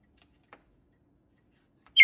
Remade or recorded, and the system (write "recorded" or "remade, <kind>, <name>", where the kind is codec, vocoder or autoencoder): recorded